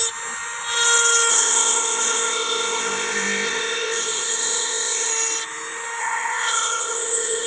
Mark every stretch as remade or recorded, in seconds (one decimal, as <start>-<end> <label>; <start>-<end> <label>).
0.0-1.3 recorded; 1.3-5.1 remade; 5.1-6.0 recorded; 6.0-7.5 remade